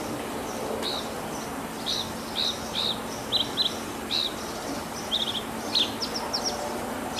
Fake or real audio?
real